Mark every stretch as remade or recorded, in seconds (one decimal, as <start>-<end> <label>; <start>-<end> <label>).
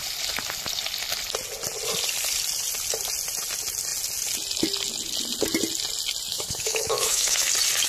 0.0-6.3 recorded; 6.3-7.5 remade; 7.5-7.9 recorded